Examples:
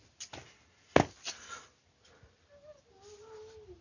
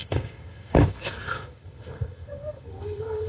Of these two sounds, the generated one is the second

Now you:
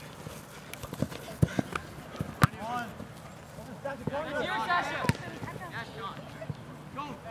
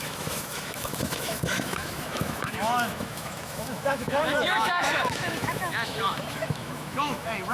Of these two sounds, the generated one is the second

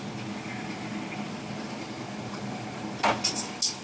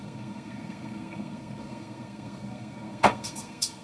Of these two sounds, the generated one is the second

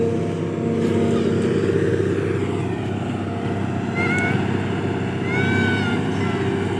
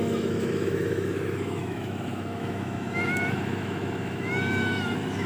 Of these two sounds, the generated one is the second